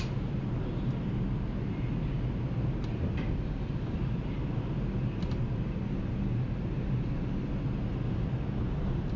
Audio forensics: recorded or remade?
recorded